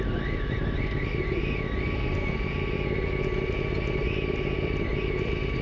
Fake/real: real